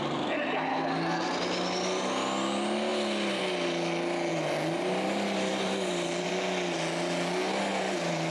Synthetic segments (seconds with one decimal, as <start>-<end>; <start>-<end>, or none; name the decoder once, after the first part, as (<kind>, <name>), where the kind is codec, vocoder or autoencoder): 5.5-6.3 (vocoder, BigVGAN v2); 7.7-8.3